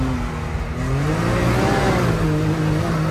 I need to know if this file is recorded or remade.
recorded